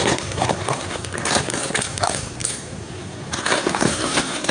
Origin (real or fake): fake